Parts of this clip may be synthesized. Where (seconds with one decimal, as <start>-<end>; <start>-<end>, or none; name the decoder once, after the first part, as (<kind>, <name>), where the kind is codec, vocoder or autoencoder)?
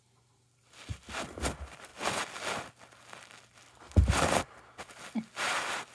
none